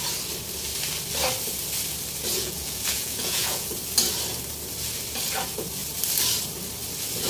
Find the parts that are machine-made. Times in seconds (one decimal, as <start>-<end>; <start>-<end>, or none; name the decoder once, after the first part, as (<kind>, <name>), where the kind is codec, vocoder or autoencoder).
2.3-3.7 (vocoder, Vocos)